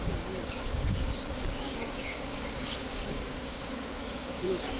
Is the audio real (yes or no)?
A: no